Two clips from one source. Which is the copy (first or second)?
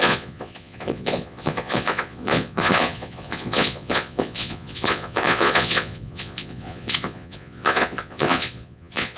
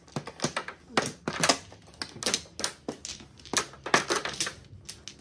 first